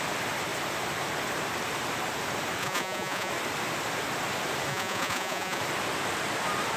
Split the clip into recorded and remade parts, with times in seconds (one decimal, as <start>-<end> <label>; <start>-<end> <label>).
0.0-2.6 recorded; 2.6-3.3 remade; 3.3-4.7 recorded; 4.7-5.6 remade; 5.6-6.8 recorded